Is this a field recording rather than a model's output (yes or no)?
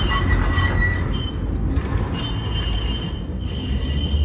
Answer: yes